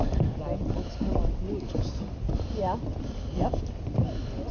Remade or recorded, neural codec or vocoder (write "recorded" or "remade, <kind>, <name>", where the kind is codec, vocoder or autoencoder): recorded